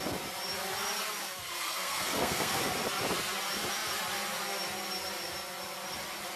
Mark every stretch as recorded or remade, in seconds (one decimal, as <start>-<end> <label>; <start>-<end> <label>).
0.0-1.2 recorded; 1.2-2.6 remade; 2.6-6.4 recorded